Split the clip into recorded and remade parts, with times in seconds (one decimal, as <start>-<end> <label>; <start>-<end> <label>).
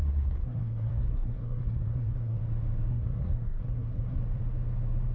0.0-2.4 remade; 2.4-2.9 recorded; 2.9-4.2 remade; 4.2-5.1 recorded